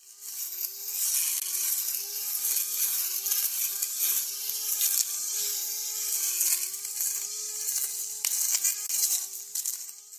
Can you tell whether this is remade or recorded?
recorded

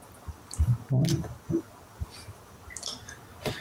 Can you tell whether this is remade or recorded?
recorded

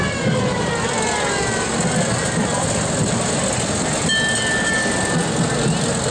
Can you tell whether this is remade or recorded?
recorded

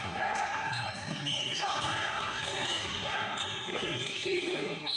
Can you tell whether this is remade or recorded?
remade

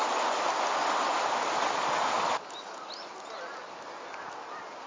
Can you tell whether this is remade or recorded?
recorded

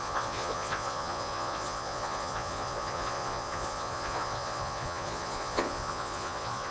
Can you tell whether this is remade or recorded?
remade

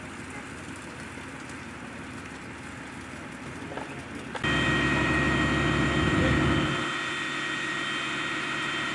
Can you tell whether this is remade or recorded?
recorded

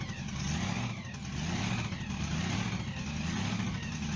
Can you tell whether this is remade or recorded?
recorded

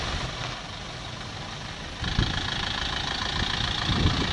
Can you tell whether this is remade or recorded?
recorded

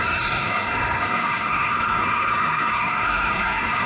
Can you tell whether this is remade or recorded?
remade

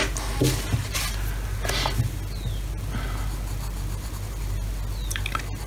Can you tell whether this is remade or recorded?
recorded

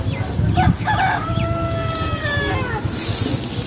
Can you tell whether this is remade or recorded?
recorded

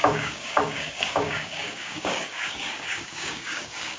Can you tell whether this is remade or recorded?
remade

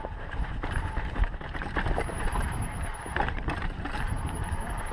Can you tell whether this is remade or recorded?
remade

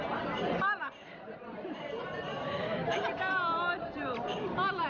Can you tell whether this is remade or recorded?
remade